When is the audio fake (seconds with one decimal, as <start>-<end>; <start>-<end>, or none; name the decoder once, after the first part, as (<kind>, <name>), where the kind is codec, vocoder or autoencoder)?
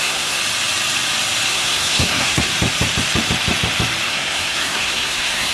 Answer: 0.0-0.4 (codec, SNAC); 1.5-2.5; 4.1-5.5